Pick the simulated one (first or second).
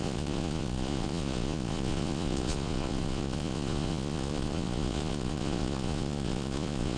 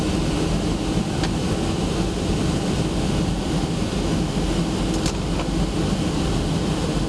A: first